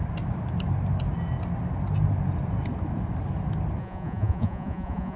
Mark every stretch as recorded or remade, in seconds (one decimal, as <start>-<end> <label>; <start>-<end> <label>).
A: 0.0-3.8 recorded; 3.8-5.2 remade

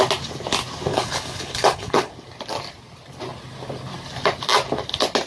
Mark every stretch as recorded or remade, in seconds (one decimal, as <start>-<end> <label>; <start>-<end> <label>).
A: 0.0-0.9 recorded; 0.9-2.1 remade; 2.1-5.3 recorded

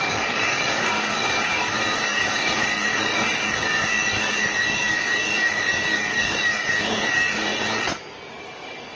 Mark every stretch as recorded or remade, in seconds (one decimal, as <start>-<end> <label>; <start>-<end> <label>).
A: 0.0-7.5 remade; 7.5-8.4 recorded; 8.4-9.0 remade